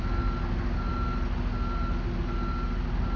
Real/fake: real